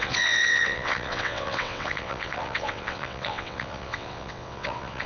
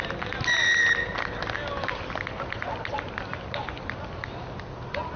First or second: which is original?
second